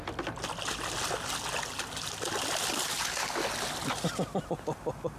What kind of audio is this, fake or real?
real